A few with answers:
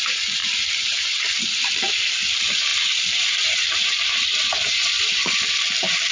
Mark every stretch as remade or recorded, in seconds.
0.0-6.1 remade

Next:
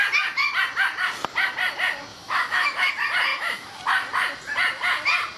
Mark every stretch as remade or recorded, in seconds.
0.0-2.1 recorded; 2.1-2.9 remade; 2.9-3.3 recorded; 3.3-3.8 remade; 3.8-5.4 recorded

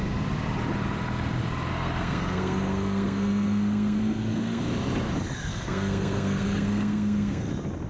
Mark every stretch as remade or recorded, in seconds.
0.0-1.7 recorded; 1.7-4.6 remade; 4.6-5.5 recorded; 5.5-7.5 remade; 7.5-7.9 recorded

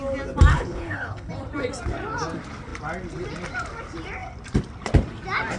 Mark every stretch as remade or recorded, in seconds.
0.0-0.5 recorded; 0.5-1.3 remade; 1.3-5.6 recorded

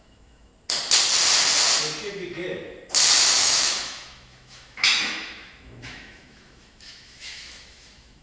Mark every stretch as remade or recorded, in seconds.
0.0-0.5 remade; 0.5-3.4 recorded; 3.4-8.2 remade

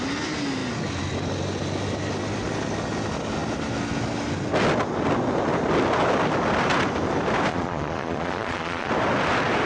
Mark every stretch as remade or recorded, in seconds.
0.0-7.5 recorded; 7.5-8.9 remade; 8.9-9.7 recorded

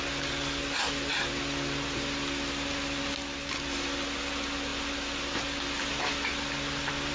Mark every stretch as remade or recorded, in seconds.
0.0-7.1 recorded